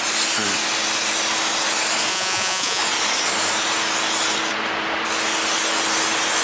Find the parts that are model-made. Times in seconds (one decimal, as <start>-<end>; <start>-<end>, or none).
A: 2.1-2.8

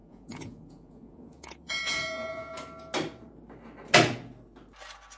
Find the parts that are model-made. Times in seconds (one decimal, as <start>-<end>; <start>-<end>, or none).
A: 0.0-2.5

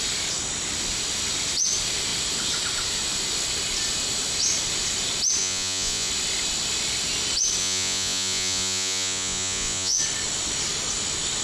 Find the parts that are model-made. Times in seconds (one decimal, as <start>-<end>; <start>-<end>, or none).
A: 5.4-6.1; 7.6-10.0